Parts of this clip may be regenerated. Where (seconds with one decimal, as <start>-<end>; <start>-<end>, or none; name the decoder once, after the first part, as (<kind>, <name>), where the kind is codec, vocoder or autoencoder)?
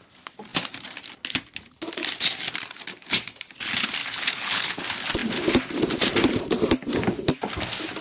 4.0-4.7 (codec, HILCodec)